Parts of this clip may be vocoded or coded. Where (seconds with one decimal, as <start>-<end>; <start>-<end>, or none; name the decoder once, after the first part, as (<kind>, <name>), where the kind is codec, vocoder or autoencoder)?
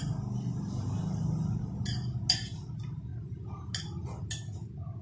none